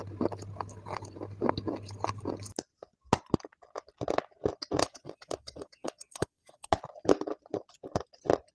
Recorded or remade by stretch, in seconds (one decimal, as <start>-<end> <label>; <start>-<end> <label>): 0.0-4.8 recorded; 4.8-6.7 remade; 6.7-8.5 recorded